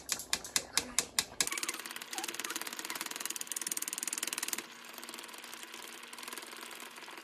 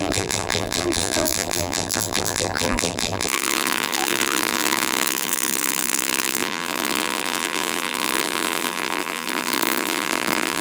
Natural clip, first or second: first